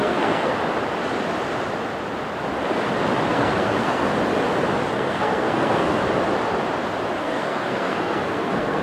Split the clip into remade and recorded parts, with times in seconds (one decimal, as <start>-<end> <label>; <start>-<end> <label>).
0.0-0.5 remade; 0.5-3.3 recorded; 3.3-4.1 remade; 4.1-4.9 recorded; 4.9-6.0 remade; 6.0-7.2 recorded; 7.2-8.8 remade